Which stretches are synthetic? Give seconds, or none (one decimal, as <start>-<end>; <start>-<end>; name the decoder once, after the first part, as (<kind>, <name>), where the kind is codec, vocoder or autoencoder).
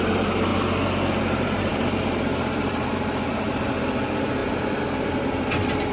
0.0-0.5 (vocoder, BigVGAN v2); 1.2-5.9